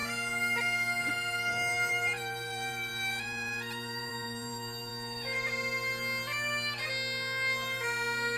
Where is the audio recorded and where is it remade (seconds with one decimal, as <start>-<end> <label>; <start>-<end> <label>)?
0.0-1.1 recorded; 1.1-4.9 remade; 4.9-8.4 recorded